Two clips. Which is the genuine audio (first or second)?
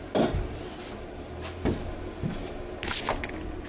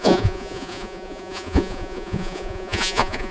first